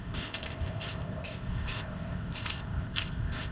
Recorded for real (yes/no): no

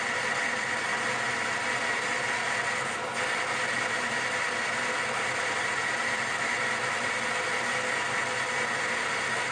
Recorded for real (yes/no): yes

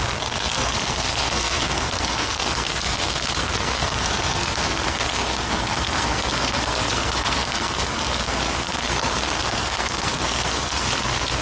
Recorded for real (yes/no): no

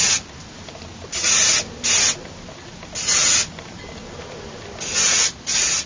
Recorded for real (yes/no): yes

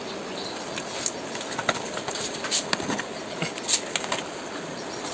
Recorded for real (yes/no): yes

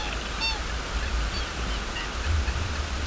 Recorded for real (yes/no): yes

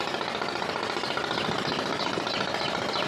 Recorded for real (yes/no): no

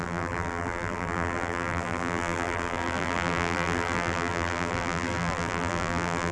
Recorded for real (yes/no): no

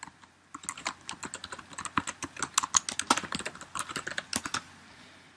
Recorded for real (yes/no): yes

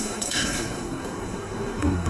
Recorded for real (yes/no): no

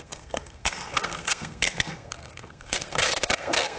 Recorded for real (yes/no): no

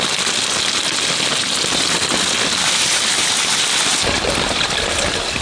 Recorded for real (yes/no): yes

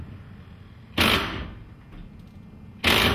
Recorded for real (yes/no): yes